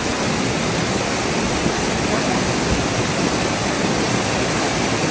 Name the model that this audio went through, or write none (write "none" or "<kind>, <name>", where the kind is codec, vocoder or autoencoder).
none